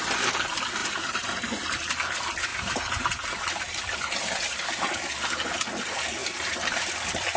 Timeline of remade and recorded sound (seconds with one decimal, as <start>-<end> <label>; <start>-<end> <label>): 0.0-0.8 recorded; 0.8-1.9 remade; 1.9-2.5 recorded; 2.5-5.0 remade; 5.0-6.2 recorded; 6.2-6.9 remade; 6.9-7.4 recorded